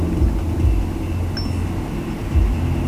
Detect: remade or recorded recorded